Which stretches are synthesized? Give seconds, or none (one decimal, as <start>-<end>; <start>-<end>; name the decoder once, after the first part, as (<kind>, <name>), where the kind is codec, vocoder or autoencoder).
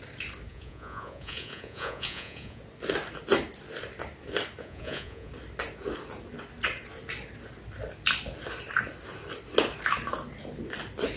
0.5-2.6 (vocoder, Vocos); 4.6-5.3